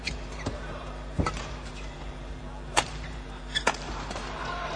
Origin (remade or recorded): remade